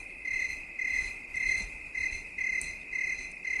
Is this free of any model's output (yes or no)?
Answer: yes